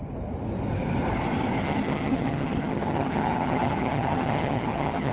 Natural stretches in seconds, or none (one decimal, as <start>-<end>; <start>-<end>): 0.0-1.6